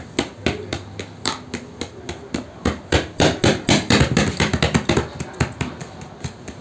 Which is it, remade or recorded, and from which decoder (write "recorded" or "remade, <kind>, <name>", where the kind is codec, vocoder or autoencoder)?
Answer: recorded